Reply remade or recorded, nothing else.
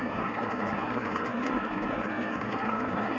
remade